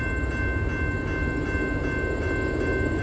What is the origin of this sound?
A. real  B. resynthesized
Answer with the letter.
A